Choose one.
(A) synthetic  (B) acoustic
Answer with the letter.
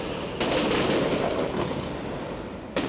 B